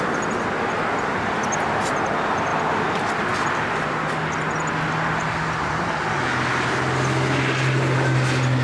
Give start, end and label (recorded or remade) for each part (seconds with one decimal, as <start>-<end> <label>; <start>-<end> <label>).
0.0-8.6 recorded